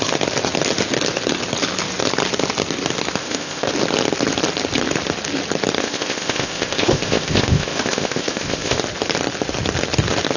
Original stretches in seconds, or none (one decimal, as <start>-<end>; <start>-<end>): 0.0-3.2; 3.7-5.8; 8.8-10.4